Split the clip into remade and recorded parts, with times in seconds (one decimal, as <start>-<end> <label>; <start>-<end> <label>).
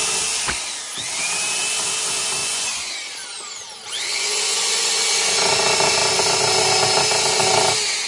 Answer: 0.0-2.4 recorded; 2.4-2.9 remade; 2.9-4.1 recorded; 4.1-4.9 remade; 4.9-8.1 recorded